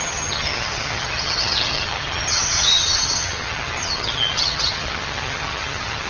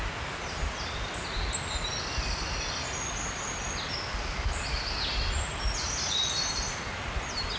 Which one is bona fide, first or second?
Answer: second